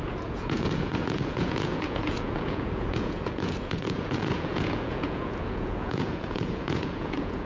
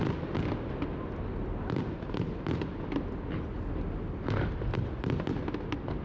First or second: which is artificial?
first